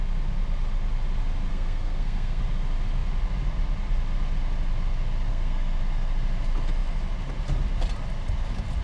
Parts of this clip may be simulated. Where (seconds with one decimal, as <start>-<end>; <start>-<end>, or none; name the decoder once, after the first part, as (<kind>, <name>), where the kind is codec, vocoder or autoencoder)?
1.5-2.4 (codec, SNAC); 5.3-5.8